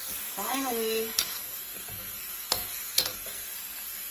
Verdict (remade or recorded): remade